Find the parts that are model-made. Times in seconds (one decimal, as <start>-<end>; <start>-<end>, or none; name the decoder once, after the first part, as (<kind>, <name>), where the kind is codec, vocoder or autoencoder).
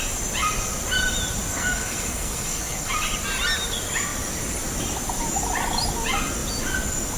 1.5-2.9 (codec, SNAC)